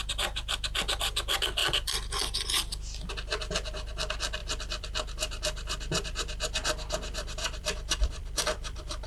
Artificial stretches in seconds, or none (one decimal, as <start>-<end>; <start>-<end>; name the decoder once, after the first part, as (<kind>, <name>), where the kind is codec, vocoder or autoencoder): 1.6-2.2 (vocoder, BigVGAN v2); 4.4-9.1